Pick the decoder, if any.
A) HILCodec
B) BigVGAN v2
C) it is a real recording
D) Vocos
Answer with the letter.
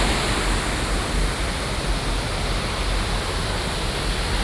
C